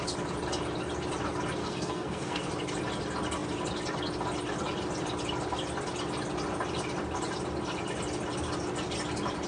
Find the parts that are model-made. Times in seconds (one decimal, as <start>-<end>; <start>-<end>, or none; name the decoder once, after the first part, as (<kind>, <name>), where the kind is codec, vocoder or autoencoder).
1.6-2.5 (codec, SNAC)